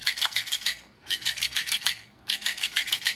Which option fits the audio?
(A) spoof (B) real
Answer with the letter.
A